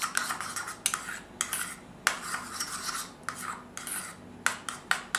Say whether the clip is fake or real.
real